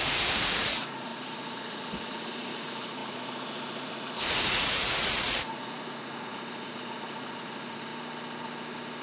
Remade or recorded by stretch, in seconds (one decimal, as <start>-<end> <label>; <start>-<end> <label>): 0.0-7.9 remade; 7.9-9.0 recorded